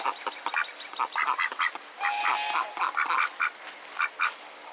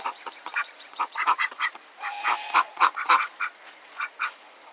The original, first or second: first